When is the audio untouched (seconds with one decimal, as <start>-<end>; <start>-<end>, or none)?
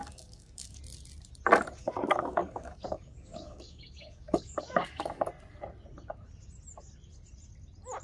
0.8-1.8; 5.3-8.0